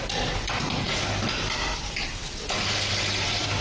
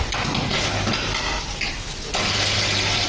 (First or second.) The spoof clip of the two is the first